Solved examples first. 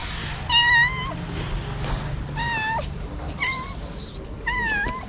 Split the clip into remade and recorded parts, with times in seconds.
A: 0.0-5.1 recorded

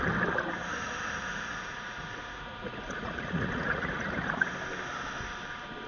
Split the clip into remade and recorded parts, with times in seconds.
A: 0.0-1.3 recorded; 1.3-4.5 remade; 4.5-5.9 recorded

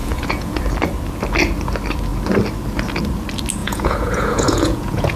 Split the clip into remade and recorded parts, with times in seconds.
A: 0.0-0.6 remade; 0.6-3.6 recorded; 3.6-5.2 remade

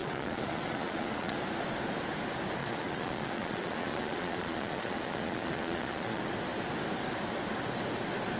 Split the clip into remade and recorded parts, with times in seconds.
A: 0.0-1.4 remade; 1.4-2.6 recorded; 2.6-6.2 remade; 6.2-8.4 recorded

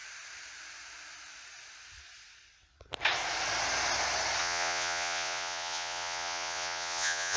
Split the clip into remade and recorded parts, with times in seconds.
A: 0.0-4.4 recorded; 4.4-7.4 remade

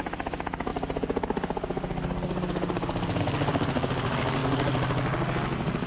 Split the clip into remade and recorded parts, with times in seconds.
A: 0.0-5.9 recorded

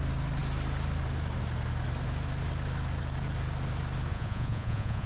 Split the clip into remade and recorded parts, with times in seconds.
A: 0.0-4.1 recorded; 4.1-5.1 remade